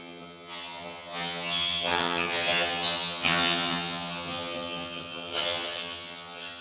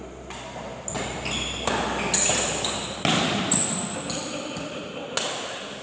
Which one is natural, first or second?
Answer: second